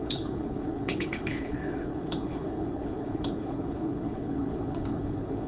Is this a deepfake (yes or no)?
yes